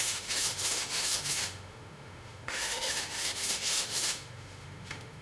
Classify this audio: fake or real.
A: fake